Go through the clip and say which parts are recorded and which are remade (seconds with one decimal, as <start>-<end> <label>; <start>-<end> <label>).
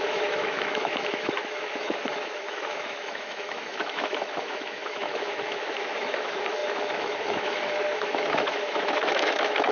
0.0-9.7 remade